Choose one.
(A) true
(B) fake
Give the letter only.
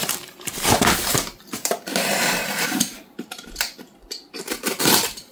B